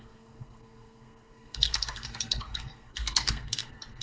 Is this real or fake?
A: fake